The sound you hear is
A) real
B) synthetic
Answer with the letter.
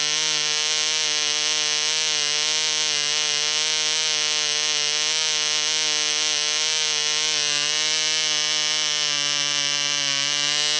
A